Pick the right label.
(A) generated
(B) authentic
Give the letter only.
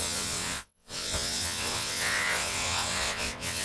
A